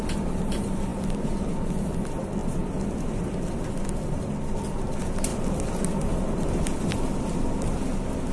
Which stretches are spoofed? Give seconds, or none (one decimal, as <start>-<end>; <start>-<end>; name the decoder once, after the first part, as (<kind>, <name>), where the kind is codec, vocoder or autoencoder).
none